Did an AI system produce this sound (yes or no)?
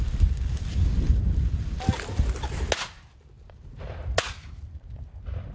no